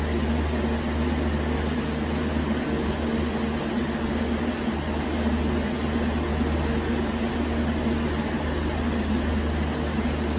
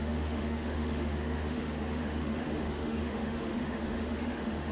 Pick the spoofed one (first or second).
second